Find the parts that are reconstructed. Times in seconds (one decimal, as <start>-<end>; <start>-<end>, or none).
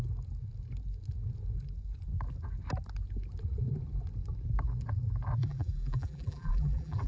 5.4-7.1